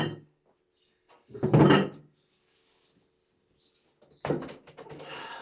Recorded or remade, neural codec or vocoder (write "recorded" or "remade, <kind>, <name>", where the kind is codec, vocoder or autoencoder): recorded